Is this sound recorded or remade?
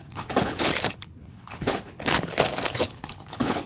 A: remade